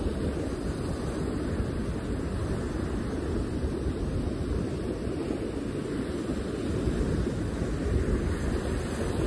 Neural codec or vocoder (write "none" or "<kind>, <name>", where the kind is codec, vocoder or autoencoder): none